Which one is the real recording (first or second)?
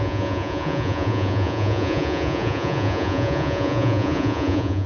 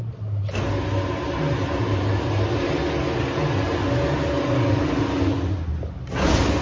second